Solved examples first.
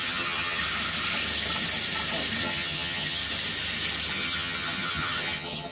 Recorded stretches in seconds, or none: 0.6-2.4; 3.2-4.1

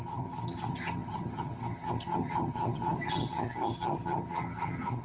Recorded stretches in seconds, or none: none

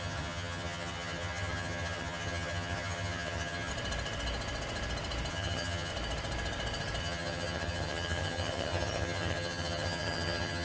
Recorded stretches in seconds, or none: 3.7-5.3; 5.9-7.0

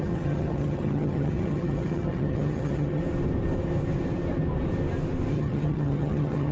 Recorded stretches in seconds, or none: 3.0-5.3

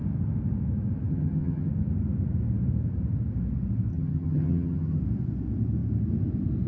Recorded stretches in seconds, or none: 0.0-1.1; 1.7-3.9; 5.0-6.7

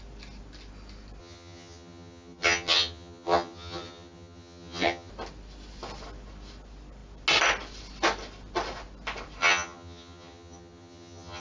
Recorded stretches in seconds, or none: 0.0-1.2; 5.1-9.4